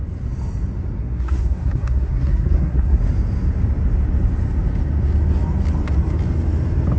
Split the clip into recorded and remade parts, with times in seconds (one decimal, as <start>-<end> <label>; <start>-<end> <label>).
0.0-1.0 recorded; 1.0-3.0 remade; 3.0-7.0 recorded